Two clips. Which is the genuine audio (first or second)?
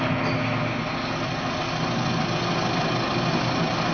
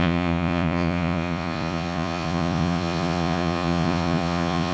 first